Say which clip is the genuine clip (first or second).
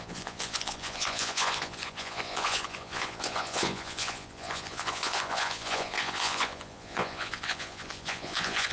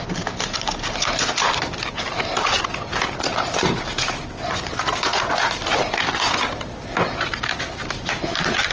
second